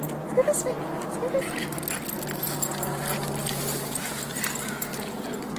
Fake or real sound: real